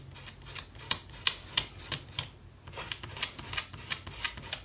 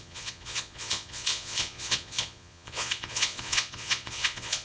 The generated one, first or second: second